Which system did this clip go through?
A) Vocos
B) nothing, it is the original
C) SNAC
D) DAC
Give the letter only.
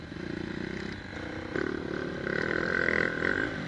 B